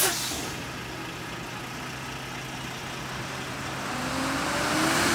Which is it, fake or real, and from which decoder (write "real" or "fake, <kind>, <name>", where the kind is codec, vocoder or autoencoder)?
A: real